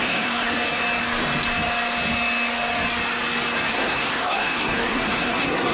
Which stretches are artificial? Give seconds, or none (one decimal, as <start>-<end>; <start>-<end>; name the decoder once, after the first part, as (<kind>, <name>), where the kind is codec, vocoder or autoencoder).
0.0-0.5 (codec, SNAC); 3.7-5.7

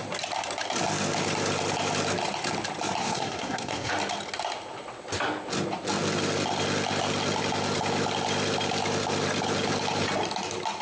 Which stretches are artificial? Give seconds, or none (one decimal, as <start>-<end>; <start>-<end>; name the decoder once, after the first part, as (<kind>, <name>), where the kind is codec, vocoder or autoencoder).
3.0-3.9 (codec, SNAC)